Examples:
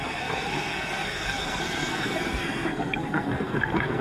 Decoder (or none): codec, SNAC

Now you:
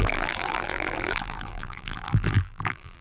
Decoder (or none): vocoder, BigVGAN v2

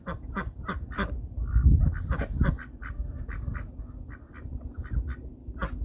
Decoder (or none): none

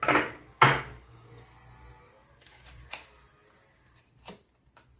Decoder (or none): vocoder, BigVGAN v2